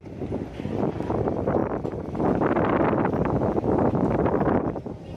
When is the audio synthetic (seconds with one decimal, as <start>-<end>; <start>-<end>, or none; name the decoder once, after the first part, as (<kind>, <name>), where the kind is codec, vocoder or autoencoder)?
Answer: 0.0-5.2 (vocoder, BigVGAN v2)